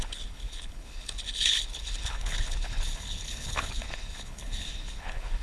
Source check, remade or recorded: remade